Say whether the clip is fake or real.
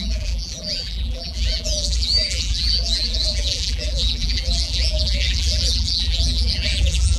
fake